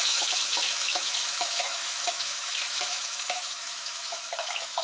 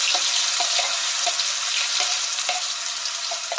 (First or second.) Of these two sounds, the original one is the second